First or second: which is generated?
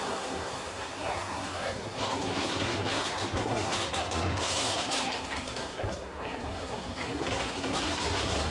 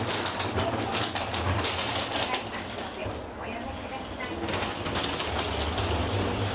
first